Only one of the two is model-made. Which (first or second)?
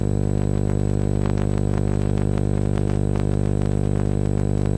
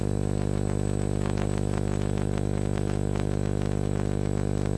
second